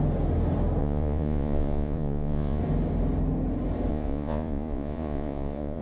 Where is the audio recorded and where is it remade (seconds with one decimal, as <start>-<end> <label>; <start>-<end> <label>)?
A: 0.0-0.8 recorded; 0.8-2.6 remade; 2.6-3.9 recorded; 3.9-5.8 remade